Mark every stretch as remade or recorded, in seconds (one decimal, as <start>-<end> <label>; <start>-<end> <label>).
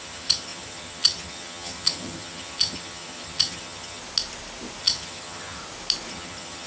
0.0-4.0 remade; 4.0-4.8 recorded; 4.8-5.6 remade; 5.6-6.1 recorded; 6.1-6.7 remade